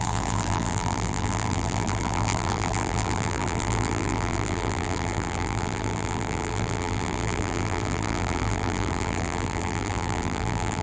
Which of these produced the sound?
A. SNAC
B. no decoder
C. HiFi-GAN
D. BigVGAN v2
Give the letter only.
D